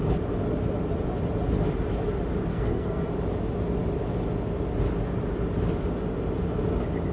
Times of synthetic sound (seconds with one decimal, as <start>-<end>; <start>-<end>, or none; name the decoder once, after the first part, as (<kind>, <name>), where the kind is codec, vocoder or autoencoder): 2.5-3.1 (codec, SNAC)